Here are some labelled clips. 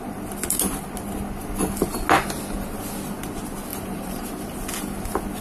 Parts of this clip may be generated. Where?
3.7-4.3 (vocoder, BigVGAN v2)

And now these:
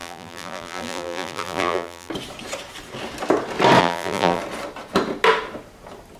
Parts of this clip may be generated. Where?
0.0-2.1 (vocoder, BigVGAN v2); 3.8-4.4

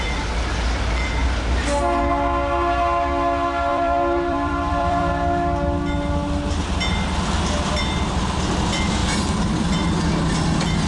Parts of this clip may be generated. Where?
3.7-5.1 (vocoder, BigVGAN v2); 9.0-10.0

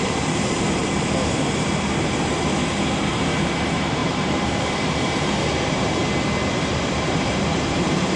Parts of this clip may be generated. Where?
0.0-0.8 (vocoder, BigVGAN v2); 3.1-6.0; 6.8-8.2

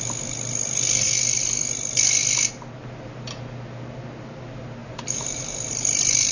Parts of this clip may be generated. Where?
4.8-5.7 (vocoder, BigVGAN v2)